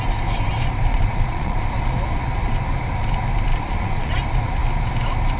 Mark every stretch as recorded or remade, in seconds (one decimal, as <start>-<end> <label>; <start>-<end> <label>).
0.0-0.9 recorded; 0.9-1.6 remade; 1.6-3.5 recorded; 3.5-4.1 remade; 4.1-5.4 recorded